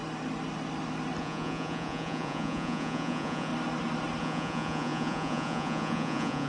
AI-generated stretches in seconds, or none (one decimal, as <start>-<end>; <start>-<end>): 1.2-3.5; 4.2-6.5